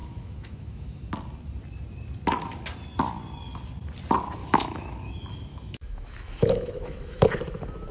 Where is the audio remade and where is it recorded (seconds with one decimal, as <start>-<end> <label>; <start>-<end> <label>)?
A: 0.0-1.0 remade; 1.0-4.4 recorded; 4.4-5.1 remade; 5.1-5.5 recorded; 5.5-7.3 remade; 7.3-7.9 recorded